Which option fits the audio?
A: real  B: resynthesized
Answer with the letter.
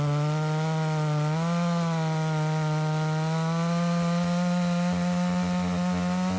A